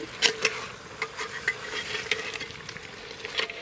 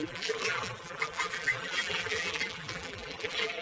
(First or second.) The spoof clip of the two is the second